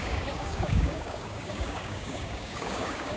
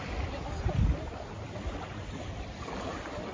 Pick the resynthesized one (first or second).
first